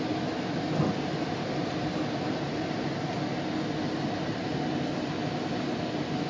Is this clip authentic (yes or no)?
yes